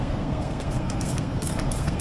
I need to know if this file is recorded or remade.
remade